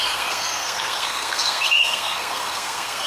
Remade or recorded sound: remade